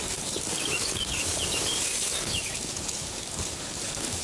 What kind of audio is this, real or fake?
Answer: fake